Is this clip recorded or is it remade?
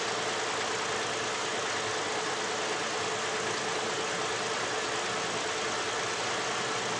recorded